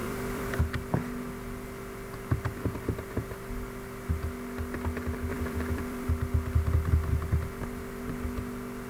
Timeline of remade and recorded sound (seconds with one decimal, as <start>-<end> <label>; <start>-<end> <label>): 0.0-0.6 remade; 0.6-5.3 recorded; 5.3-6.1 remade; 6.1-8.9 recorded

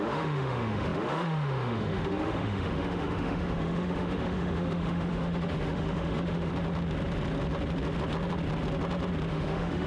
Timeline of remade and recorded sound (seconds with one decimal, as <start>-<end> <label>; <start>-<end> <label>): 0.0-6.5 remade; 6.5-9.3 recorded; 9.3-9.9 remade

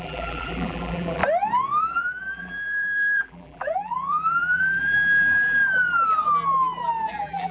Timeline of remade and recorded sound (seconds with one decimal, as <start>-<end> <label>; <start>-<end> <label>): 0.0-1.2 remade; 1.2-1.8 recorded; 1.8-5.6 remade; 5.6-7.1 recorded; 7.1-7.5 remade

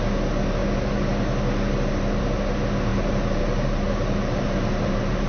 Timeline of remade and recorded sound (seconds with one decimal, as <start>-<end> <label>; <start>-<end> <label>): 0.0-2.9 recorded; 2.9-5.3 remade